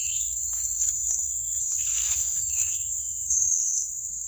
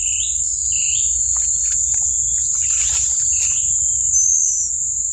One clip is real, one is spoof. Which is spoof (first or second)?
first